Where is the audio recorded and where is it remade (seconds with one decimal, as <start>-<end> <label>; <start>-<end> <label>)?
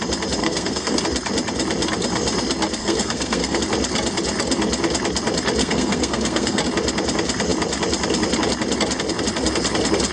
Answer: 0.0-0.4 recorded; 0.4-1.0 remade; 1.0-2.8 recorded; 2.8-3.6 remade; 3.6-5.6 recorded; 5.6-6.6 remade; 6.6-10.1 recorded